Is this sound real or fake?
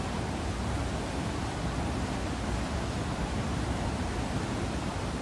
real